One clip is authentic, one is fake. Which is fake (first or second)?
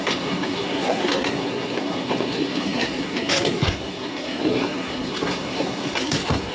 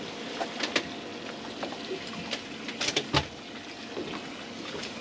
first